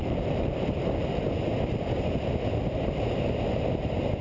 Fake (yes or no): no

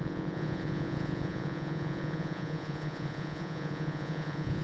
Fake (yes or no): yes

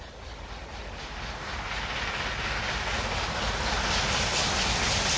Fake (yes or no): no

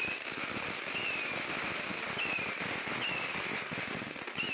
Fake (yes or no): no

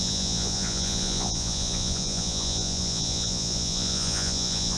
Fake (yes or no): yes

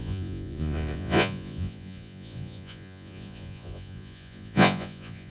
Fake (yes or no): yes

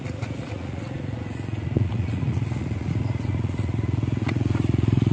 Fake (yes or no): yes